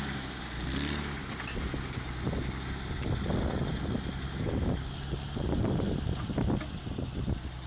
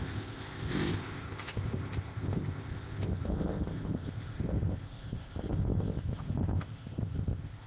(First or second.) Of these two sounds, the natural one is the first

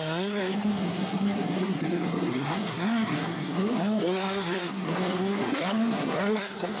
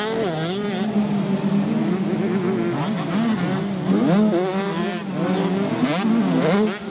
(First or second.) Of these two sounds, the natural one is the second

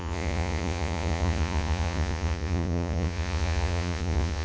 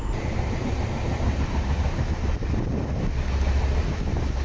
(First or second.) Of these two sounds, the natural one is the second